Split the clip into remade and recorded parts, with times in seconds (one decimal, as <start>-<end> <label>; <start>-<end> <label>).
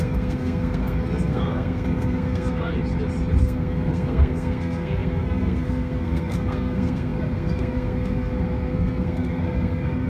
0.0-2.7 remade; 2.7-3.4 recorded; 3.4-10.1 remade